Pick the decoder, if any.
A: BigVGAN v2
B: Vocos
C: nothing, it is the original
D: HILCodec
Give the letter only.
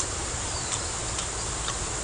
C